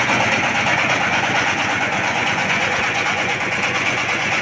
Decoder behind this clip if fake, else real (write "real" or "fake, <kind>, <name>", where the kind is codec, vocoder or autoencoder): fake, vocoder, Vocos